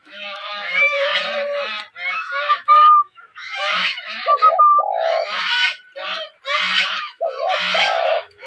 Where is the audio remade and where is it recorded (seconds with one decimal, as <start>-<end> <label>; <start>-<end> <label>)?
0.0-1.1 remade; 1.1-2.1 recorded; 2.1-5.6 remade; 5.6-6.8 recorded; 6.8-8.5 remade